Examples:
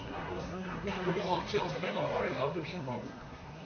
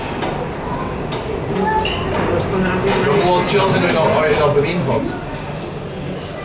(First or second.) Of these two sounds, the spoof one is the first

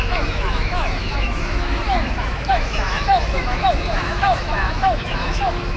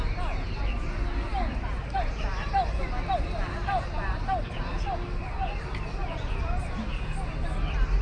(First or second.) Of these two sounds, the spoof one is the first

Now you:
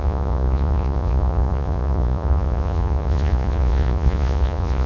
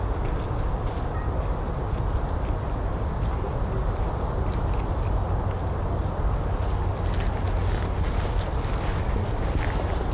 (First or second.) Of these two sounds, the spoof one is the first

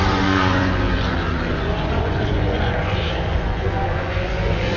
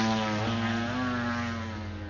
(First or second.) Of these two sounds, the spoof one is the first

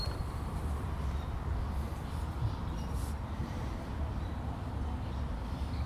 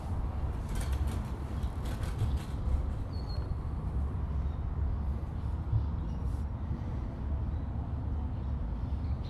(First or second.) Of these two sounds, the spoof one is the first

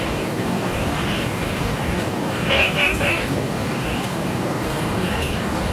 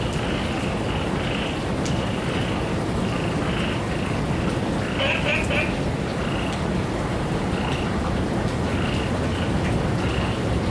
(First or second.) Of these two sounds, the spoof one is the first